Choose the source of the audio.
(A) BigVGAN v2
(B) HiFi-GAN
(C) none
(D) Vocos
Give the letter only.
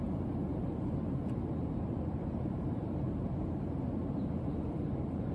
A